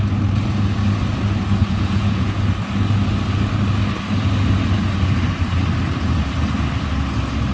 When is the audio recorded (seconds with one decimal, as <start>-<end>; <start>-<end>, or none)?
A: 0.0-1.6; 2.4-7.5